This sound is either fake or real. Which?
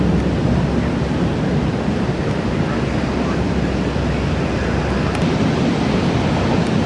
real